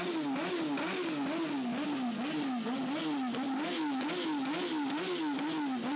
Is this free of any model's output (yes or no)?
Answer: yes